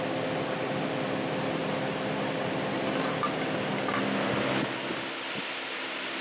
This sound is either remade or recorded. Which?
recorded